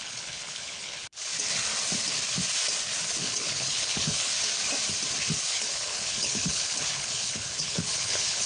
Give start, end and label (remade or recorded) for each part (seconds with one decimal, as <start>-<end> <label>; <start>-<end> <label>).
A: 0.0-1.3 remade; 1.3-3.2 recorded; 3.2-4.3 remade; 4.3-5.5 recorded; 5.5-8.5 remade